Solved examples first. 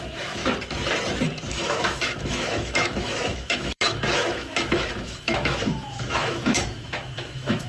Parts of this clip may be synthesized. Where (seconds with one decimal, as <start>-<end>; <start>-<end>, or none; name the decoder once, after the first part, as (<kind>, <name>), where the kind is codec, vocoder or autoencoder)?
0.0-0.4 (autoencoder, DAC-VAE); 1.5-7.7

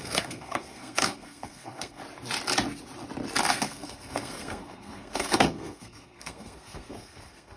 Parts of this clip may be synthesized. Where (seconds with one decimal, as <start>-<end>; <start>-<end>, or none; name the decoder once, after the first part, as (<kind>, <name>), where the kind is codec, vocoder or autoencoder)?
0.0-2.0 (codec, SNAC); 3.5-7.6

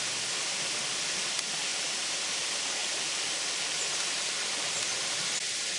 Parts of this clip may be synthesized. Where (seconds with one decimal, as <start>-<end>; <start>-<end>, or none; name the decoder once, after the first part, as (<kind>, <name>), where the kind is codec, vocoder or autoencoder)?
1.7-2.2 (vocoder, BigVGAN v2); 2.8-4.9

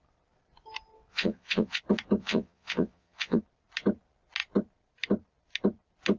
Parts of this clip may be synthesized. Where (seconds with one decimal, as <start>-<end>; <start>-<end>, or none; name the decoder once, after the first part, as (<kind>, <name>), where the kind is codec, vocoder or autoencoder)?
1.1-1.8 (vocoder, Vocos); 2.2-3.4

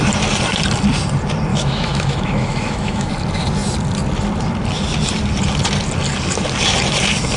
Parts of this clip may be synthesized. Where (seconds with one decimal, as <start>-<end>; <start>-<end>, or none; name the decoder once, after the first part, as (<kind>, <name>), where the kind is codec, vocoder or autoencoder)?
1.5-3.1 (autoencoder, DAC-VAE)